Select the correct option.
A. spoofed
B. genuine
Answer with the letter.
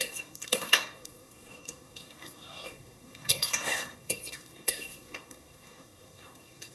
A